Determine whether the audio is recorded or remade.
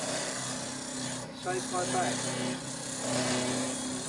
recorded